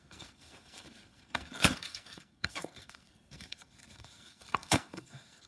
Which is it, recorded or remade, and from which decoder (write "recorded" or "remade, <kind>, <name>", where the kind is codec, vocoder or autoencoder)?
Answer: remade, codec, SNAC